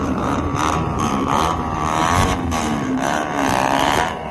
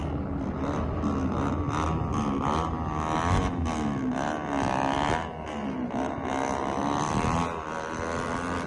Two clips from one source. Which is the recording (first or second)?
second